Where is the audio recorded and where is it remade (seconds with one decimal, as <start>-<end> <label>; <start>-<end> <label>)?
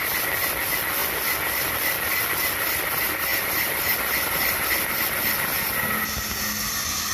0.0-1.0 recorded; 1.0-2.1 remade; 2.1-3.3 recorded; 3.3-5.0 remade; 5.0-7.1 recorded